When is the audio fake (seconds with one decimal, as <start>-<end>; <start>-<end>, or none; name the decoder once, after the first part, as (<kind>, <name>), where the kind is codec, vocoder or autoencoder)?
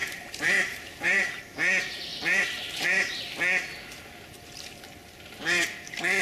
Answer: 0.0-1.4 (vocoder, BigVGAN v2); 2.1-3.2